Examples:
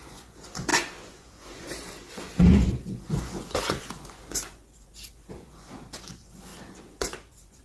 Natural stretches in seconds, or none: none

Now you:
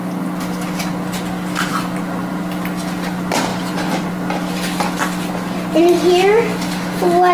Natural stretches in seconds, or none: 0.0-7.3

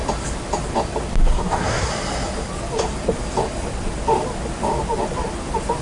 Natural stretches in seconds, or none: 0.0-1.3; 1.9-5.8

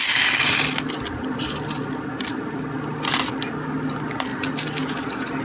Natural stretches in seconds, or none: 0.0-5.4